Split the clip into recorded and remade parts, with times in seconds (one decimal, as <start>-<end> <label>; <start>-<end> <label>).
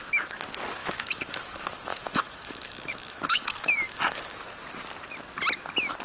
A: 0.0-0.8 recorded; 0.8-4.4 remade; 4.4-6.0 recorded